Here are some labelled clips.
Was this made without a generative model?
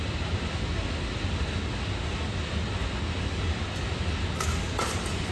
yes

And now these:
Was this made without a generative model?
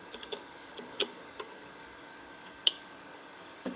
no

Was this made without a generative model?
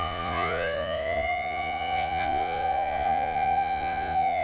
no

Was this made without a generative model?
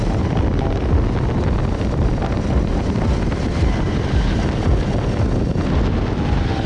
yes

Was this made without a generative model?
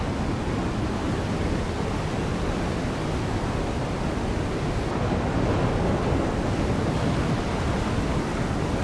yes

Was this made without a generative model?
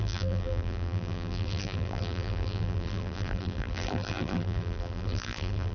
no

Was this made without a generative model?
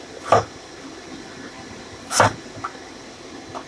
yes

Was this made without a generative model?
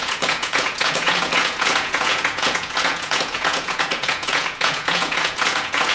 no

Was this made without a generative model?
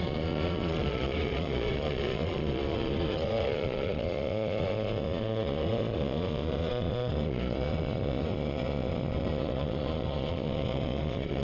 no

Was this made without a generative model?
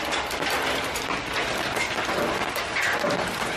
yes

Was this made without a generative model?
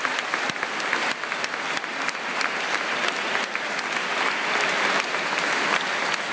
yes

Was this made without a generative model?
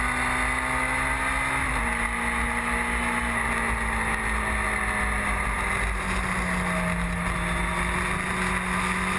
yes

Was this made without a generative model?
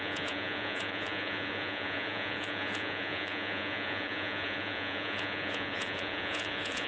no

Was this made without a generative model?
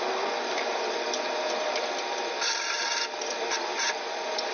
no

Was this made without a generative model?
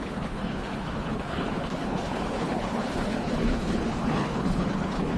no